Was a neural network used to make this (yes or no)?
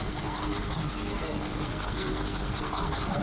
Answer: yes